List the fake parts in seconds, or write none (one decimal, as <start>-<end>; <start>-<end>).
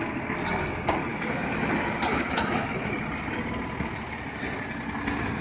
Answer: 1.1-1.7; 2.1-2.9